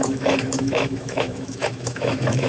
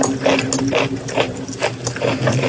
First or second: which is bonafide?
second